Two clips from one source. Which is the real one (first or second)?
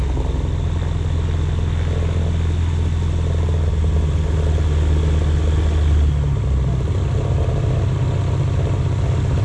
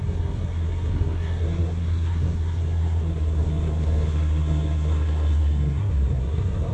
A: first